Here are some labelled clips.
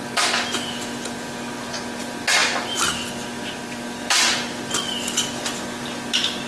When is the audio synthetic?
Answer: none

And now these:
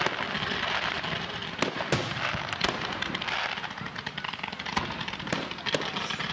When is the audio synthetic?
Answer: 4.7-6.3 (vocoder, BigVGAN v2)

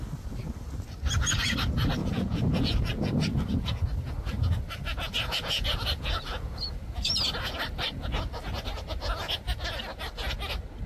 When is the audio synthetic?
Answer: 2.0-3.1 (vocoder, Vocos); 4.9-6.8

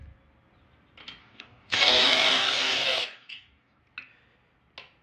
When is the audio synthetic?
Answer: 1.2-3.8 (codec, DAC)